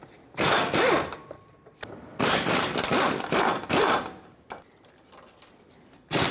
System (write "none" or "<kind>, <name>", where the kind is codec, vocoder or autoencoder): vocoder, BigVGAN v2